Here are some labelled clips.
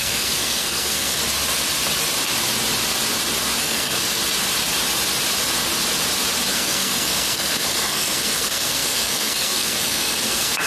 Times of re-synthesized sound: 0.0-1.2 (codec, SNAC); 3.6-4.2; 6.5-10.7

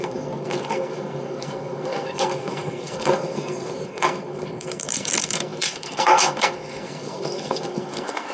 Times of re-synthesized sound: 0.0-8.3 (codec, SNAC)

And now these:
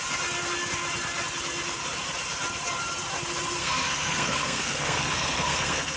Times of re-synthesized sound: 3.6-6.0 (codec, SNAC)

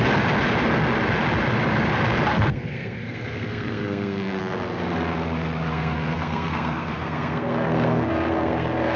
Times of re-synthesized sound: 2.3-4.4 (codec, SNAC); 5.7-9.0